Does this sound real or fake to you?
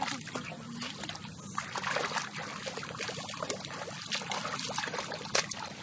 real